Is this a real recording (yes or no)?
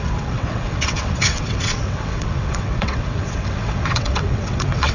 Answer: no